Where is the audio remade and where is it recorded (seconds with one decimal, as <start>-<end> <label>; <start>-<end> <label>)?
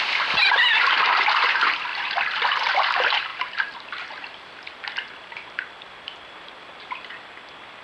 0.0-7.8 remade